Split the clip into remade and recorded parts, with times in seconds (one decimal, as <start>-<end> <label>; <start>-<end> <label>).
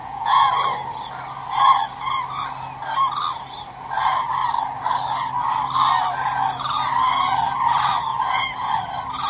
0.0-0.5 remade; 0.5-8.1 recorded; 8.1-8.7 remade; 8.7-9.3 recorded